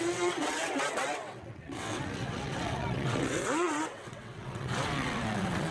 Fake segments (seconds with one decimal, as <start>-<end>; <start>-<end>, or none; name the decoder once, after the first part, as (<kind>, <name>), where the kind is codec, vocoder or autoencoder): 0.0-5.7 (vocoder, WaveNeXt)